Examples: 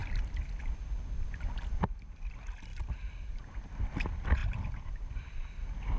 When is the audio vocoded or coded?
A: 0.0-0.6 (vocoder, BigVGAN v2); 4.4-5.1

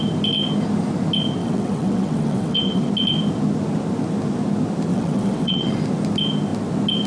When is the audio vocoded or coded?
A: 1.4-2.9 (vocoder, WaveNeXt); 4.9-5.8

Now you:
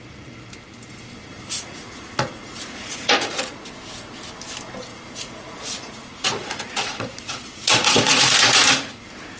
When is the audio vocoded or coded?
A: 1.3-3.6 (vocoder, Vocos); 4.9-8.9

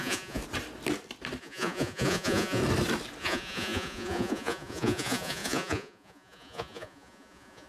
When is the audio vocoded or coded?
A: 0.0-0.4 (vocoder, Vocos); 1.4-2.6; 3.2-7.7

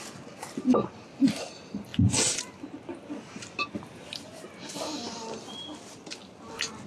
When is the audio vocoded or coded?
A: none

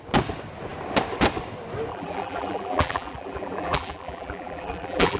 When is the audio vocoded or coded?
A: 1.9-5.2 (vocoder, BigVGAN v2)

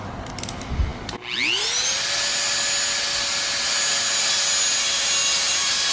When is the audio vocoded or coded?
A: none

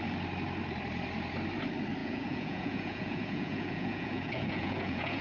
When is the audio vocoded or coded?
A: 2.0-5.2 (vocoder, Vocos)